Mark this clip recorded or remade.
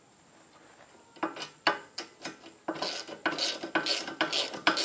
recorded